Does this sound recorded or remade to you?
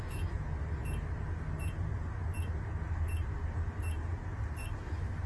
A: recorded